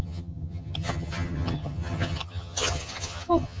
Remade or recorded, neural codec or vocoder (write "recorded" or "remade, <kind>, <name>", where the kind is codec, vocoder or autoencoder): remade, vocoder, HiFi-GAN